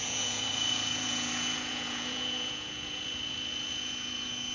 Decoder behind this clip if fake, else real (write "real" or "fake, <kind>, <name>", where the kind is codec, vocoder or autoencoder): fake, vocoder, Vocos